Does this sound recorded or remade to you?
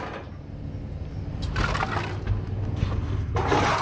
recorded